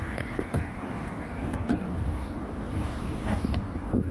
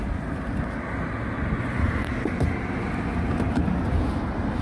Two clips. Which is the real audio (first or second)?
second